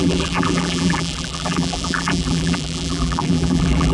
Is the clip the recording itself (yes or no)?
no